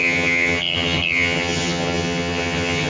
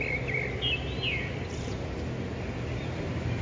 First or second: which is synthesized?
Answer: first